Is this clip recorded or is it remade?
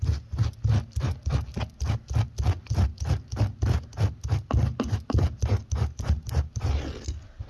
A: recorded